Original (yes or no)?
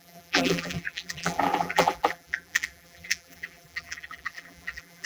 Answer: no